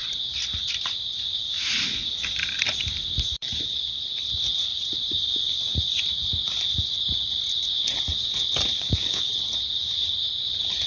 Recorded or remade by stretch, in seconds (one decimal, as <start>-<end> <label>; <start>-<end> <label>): 0.0-8.7 recorded; 8.7-9.3 remade; 9.3-10.9 recorded